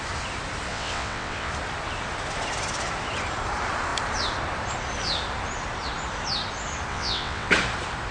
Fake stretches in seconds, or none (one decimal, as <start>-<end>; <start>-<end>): 0.7-1.5; 6.9-7.5